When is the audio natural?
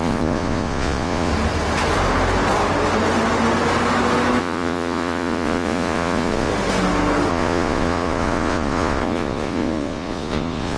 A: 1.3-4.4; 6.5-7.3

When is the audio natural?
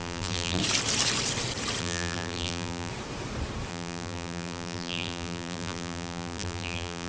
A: 0.6-1.8; 2.9-3.7